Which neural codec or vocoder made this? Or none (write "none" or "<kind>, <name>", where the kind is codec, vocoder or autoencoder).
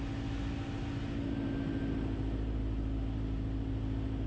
none